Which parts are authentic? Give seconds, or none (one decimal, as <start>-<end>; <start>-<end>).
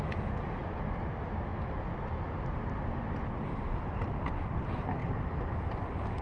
0.0-5.0